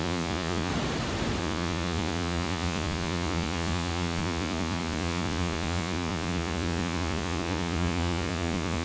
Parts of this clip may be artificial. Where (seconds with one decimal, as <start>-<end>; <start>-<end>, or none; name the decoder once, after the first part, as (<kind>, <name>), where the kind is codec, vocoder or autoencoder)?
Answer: 0.0-0.7 (vocoder, Vocos); 1.4-8.8